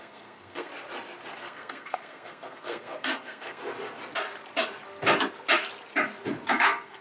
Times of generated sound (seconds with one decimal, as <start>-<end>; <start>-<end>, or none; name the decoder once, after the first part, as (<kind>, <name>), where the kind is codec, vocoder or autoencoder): 0.0-0.7 (codec, SNAC); 1.4-3.6; 6.5-7.0